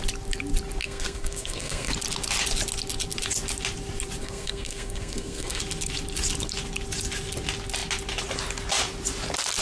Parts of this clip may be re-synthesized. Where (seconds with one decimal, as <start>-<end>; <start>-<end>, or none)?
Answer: 0.8-1.9; 4.2-5.6